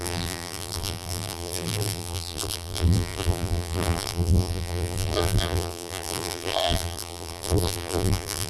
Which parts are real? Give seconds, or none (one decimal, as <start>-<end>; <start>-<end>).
none

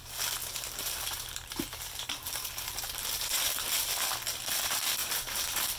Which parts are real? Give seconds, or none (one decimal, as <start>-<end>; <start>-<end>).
0.0-0.4; 3.9-5.0

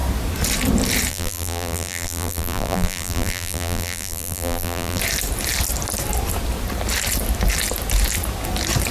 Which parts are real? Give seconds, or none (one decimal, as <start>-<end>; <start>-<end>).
0.0-1.1; 5.0-8.9